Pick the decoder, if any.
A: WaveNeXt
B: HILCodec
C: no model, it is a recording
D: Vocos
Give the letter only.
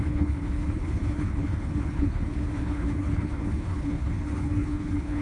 B